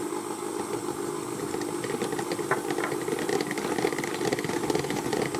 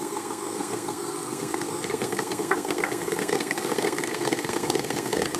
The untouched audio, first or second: first